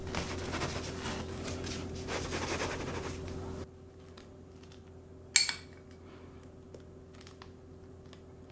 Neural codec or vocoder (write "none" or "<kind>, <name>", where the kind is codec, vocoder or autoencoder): none